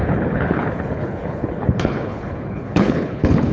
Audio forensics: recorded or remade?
remade